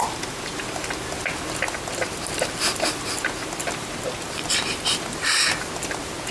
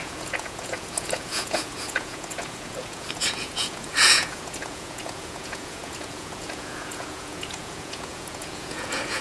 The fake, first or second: second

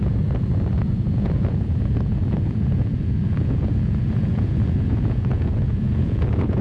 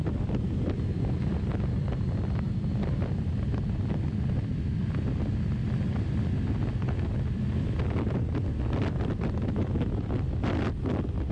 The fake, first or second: first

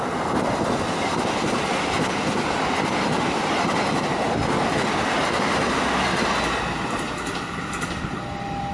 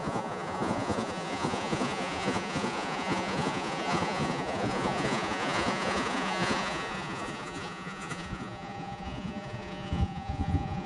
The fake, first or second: second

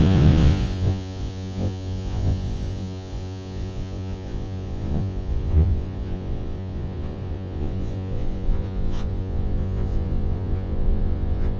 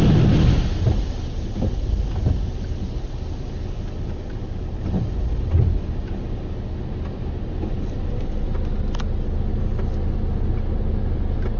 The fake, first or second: first